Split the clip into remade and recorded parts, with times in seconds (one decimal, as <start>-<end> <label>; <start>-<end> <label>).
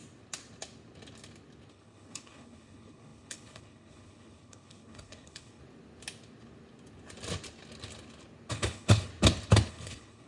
0.0-1.7 recorded; 1.7-5.6 remade; 5.6-8.5 recorded; 8.5-9.1 remade; 9.1-9.7 recorded; 9.7-10.3 remade